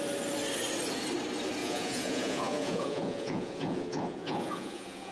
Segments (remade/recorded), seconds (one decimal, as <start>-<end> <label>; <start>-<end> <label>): 0.0-1.6 recorded; 1.6-5.1 remade